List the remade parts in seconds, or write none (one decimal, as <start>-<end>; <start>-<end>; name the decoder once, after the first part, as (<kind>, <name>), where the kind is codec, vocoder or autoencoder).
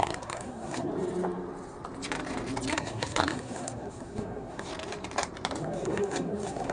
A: 0.0-0.9 (codec, SNAC); 2.7-4.7; 5.6-6.7